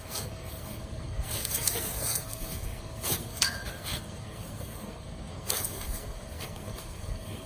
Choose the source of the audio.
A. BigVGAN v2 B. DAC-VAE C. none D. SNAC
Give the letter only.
D